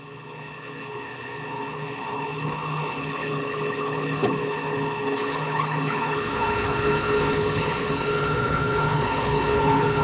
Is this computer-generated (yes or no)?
yes